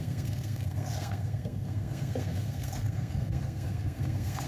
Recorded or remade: remade